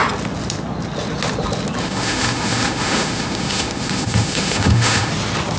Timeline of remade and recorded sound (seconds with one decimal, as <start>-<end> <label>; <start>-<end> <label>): 0.0-1.8 recorded; 1.8-5.1 remade; 5.1-5.6 recorded